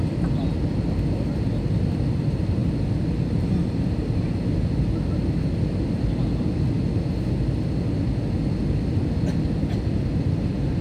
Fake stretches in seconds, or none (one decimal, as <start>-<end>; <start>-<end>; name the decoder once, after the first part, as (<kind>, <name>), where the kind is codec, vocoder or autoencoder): none